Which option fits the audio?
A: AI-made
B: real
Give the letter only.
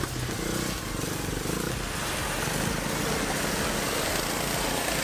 B